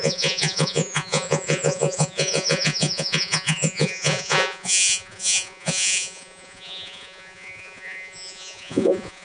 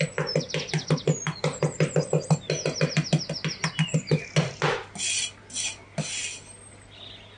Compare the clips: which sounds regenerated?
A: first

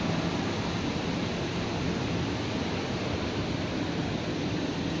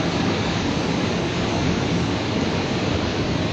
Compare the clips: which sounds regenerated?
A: second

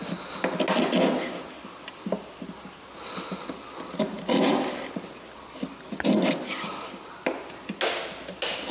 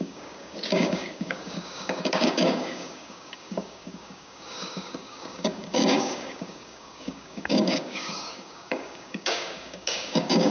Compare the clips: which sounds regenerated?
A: second